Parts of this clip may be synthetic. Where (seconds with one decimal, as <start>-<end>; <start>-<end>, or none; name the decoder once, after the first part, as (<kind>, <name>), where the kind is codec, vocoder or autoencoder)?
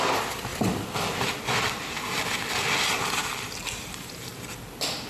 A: none